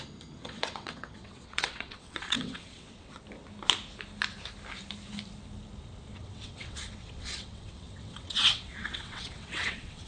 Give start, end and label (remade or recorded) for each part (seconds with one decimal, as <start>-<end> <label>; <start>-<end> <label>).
0.0-0.4 recorded; 0.4-3.2 remade; 3.2-6.1 recorded; 6.1-10.1 remade